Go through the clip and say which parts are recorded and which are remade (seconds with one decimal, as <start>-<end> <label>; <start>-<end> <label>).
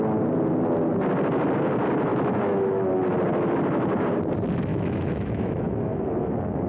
0.0-2.1 recorded; 2.1-2.9 remade; 2.9-4.7 recorded; 4.7-6.0 remade; 6.0-6.7 recorded